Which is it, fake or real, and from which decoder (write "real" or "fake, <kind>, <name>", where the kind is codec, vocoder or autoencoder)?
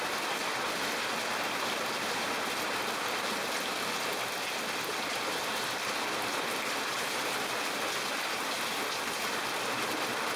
real